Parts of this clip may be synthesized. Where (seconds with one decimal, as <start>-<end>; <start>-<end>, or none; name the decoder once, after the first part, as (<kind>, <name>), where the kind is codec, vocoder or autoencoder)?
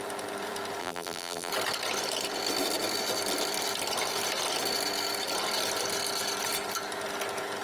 0.8-1.5 (vocoder, BigVGAN v2)